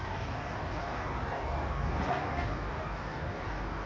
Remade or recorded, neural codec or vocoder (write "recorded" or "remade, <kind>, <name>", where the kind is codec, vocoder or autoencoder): remade, codec, DAC